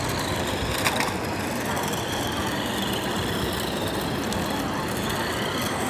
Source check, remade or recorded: recorded